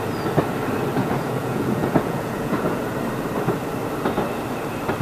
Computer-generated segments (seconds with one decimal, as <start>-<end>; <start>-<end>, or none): 1.0-2.8